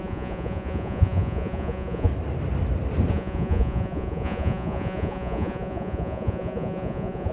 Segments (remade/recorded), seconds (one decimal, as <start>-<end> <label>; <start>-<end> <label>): 0.0-2.1 remade; 2.1-3.1 recorded; 3.1-7.3 remade

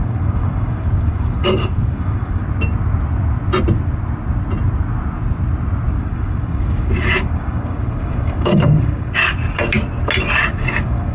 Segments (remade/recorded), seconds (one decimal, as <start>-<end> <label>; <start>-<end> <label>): 0.0-2.4 remade; 2.4-5.9 recorded; 5.9-9.2 remade; 9.2-10.5 recorded; 10.5-11.1 remade